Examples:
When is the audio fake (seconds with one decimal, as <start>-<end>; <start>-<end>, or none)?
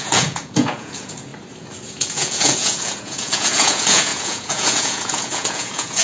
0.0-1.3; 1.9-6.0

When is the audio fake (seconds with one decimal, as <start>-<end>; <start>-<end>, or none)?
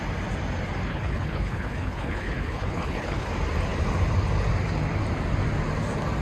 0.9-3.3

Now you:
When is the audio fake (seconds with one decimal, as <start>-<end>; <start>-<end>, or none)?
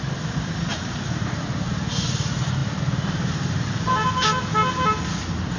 0.7-1.8; 2.6-4.1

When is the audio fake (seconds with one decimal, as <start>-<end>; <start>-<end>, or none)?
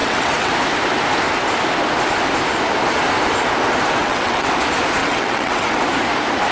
0.0-0.5; 4.0-4.5; 5.0-5.8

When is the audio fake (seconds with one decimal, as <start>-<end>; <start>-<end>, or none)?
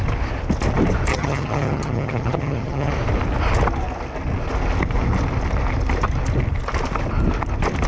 1.1-2.9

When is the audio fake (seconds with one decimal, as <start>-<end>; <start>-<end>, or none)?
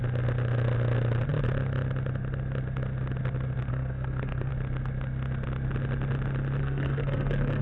3.7-4.5; 6.6-7.6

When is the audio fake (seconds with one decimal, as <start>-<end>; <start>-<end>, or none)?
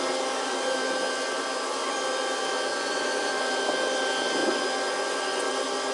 2.7-3.5; 4.4-5.5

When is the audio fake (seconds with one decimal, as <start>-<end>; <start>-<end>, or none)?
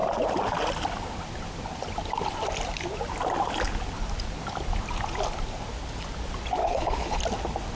6.6-7.2